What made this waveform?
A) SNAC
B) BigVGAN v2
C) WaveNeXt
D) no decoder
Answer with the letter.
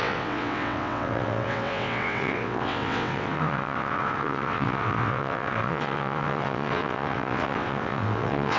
C